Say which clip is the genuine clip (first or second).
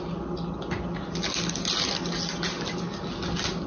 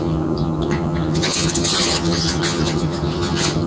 first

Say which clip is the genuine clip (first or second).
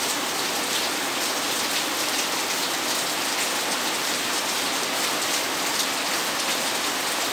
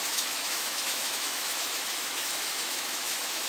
first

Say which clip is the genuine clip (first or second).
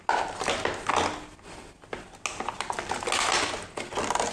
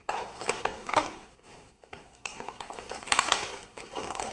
first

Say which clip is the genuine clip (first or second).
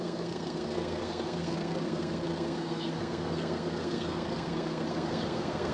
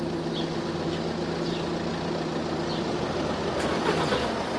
second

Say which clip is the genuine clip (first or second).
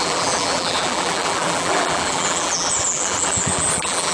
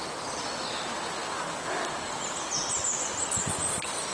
second